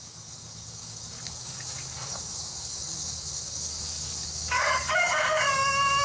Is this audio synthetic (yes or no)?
yes